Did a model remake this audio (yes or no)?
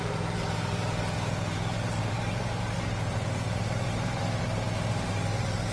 yes